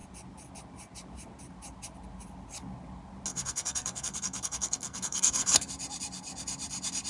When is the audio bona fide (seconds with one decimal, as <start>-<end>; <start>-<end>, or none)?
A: 0.0-3.3; 5.7-7.1